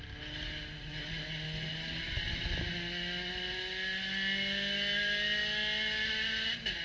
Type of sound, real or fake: real